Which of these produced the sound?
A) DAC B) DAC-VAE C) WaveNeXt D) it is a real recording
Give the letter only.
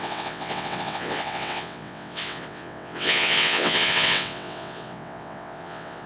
C